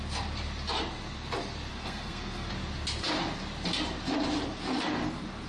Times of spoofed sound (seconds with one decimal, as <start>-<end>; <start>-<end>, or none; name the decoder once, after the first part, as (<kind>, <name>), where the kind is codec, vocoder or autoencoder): 1.7-2.5 (codec, SNAC)